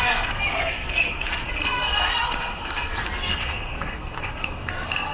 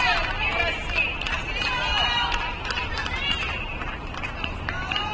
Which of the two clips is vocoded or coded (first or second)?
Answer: first